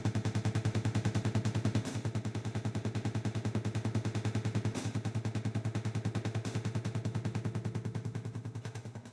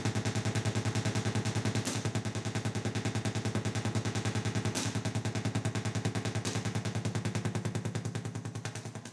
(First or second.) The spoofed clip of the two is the first